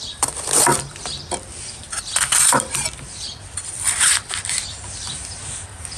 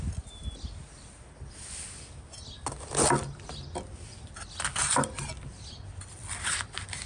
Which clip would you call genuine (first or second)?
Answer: second